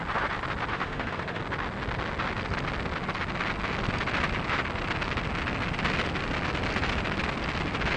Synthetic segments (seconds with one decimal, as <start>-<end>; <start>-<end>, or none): 0.7-1.4